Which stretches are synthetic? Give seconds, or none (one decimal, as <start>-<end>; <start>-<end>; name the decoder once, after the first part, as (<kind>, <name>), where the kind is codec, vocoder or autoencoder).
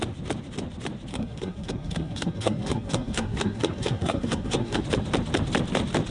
1.1-4.8 (codec, SNAC)